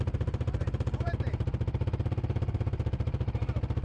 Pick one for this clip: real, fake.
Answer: fake